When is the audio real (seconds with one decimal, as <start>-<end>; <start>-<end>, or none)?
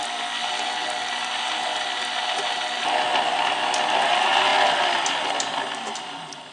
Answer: 0.0-6.5